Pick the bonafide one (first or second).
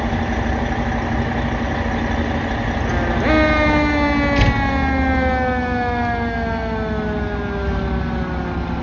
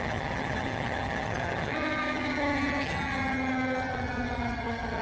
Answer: first